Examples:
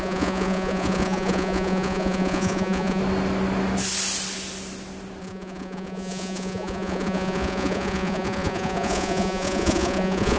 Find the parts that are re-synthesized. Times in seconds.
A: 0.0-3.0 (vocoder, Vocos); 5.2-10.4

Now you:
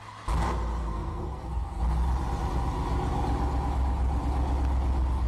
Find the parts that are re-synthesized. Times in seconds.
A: 0.8-1.8 (codec, SNAC)

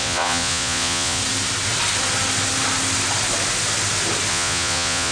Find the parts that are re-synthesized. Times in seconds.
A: 0.0-1.2 (vocoder, Vocos); 4.3-5.1

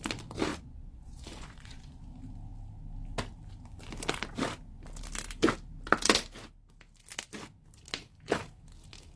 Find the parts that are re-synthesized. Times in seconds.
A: 0.5-2.0 (vocoder, Vocos)